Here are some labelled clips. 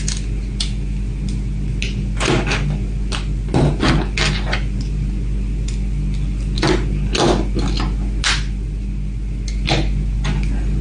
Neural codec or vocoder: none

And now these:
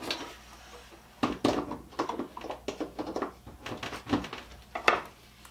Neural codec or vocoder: none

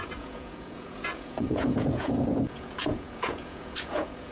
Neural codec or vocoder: vocoder, Vocos